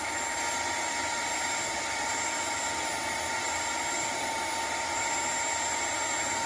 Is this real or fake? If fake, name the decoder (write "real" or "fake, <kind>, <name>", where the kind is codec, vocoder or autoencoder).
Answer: real